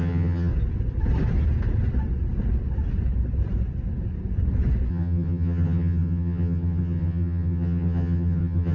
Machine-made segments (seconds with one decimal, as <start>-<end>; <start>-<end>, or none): 0.0-0.5; 4.9-8.7

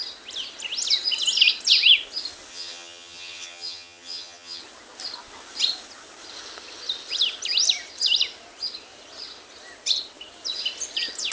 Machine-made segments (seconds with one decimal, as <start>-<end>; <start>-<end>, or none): 2.5-4.6

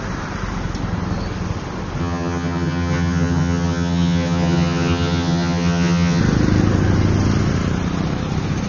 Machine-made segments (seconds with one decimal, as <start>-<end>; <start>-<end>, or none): 2.0-6.2

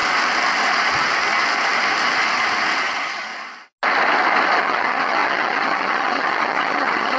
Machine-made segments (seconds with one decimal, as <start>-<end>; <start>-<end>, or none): 2.8-3.3; 4.6-7.2